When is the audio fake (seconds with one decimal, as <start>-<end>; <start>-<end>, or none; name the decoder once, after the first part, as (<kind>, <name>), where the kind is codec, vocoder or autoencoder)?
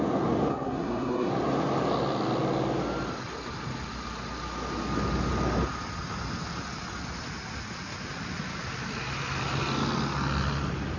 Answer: 0.5-1.3 (codec, SNAC)